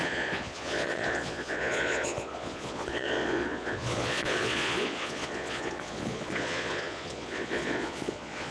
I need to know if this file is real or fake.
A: fake